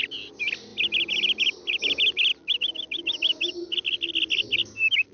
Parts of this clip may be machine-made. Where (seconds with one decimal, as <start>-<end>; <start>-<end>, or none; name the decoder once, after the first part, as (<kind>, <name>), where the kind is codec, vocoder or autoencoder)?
none